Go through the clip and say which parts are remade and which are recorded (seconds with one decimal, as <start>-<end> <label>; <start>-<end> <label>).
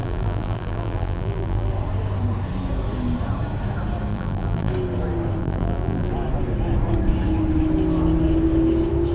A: 0.0-1.7 remade; 1.7-4.1 recorded; 4.1-4.7 remade; 4.7-5.4 recorded; 5.4-6.1 remade; 6.1-9.1 recorded